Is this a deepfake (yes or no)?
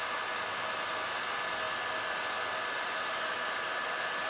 no